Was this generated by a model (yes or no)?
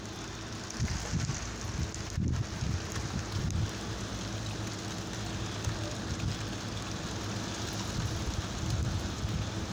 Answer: no